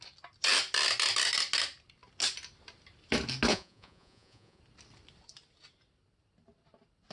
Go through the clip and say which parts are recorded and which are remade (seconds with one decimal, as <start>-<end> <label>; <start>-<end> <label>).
0.0-3.5 recorded; 3.5-4.6 remade; 4.6-7.1 recorded